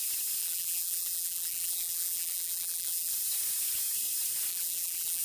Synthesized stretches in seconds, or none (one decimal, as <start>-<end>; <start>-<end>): 0.4-3.1; 4.5-5.2

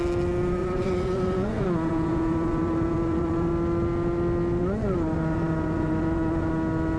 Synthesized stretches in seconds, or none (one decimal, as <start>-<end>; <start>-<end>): 0.6-3.5; 4.6-6.5

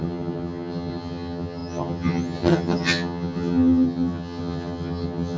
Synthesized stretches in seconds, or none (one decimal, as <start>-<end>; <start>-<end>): 0.0-5.4

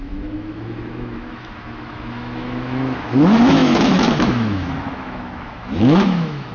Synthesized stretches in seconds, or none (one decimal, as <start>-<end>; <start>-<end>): 0.0-6.5

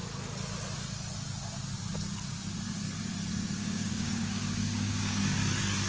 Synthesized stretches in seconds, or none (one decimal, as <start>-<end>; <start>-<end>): 3.6-5.2

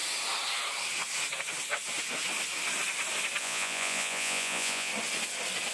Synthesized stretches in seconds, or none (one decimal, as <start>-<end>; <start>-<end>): 3.4-4.9